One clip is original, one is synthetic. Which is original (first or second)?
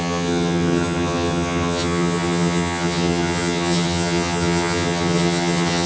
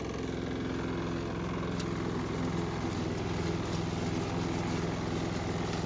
second